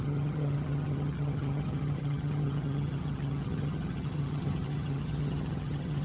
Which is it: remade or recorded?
remade